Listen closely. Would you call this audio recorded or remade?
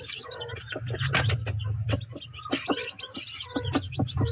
recorded